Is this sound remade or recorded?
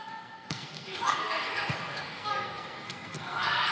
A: remade